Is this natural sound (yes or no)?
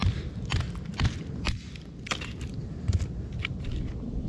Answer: yes